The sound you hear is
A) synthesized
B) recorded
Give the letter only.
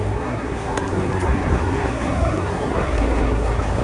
A